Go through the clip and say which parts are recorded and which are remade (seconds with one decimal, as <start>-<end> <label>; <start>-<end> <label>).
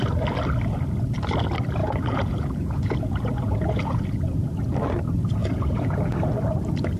0.0-1.8 recorded; 1.8-4.5 remade; 4.5-5.4 recorded; 5.4-6.2 remade; 6.2-7.0 recorded